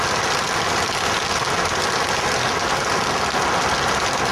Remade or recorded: recorded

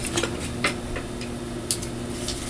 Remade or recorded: recorded